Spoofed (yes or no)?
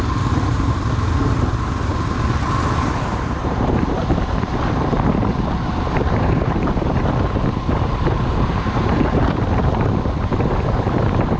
yes